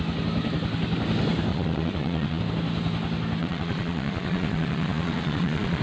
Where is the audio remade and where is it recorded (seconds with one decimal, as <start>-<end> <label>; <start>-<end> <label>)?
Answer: 0.0-1.5 recorded; 1.5-2.4 remade; 2.4-3.4 recorded; 3.4-5.8 remade